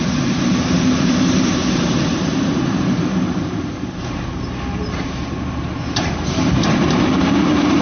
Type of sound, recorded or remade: remade